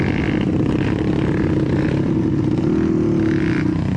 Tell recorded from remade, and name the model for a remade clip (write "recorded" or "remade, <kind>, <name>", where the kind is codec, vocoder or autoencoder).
recorded